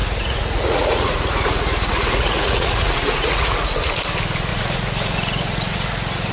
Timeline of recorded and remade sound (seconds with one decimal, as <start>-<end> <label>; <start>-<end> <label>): 0.0-3.8 remade; 3.8-4.5 recorded; 4.5-6.3 remade